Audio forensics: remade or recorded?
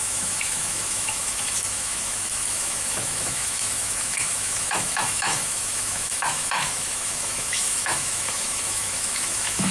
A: remade